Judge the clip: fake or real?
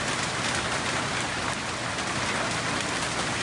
real